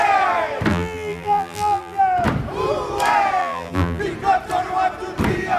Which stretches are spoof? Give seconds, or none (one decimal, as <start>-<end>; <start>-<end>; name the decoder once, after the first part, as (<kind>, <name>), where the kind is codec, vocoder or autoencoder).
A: 0.7-2.0 (vocoder, BigVGAN v2); 3.4-4.0